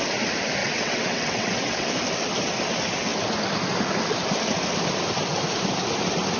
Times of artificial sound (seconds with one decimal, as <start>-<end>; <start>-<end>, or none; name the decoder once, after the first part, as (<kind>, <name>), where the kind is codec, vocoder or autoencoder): 0.6-1.9 (vocoder, WaveNeXt)